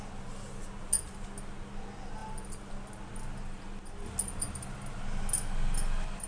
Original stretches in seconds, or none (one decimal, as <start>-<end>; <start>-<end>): 0.0-6.3